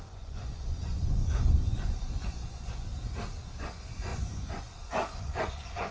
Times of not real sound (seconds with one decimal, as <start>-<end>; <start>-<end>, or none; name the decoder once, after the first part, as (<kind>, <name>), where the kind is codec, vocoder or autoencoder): 0.0-2.9 (vocoder, Vocos); 3.6-5.9